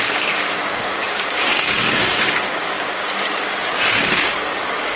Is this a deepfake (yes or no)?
yes